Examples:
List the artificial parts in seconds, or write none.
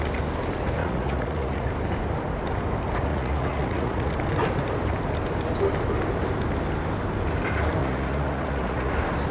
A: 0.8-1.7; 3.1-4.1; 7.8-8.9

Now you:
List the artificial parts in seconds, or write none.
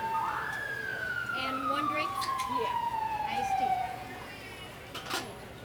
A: 0.9-4.3